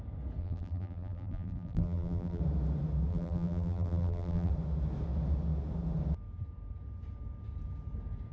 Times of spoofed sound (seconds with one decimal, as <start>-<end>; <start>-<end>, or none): 0.4-2.4; 3.1-4.5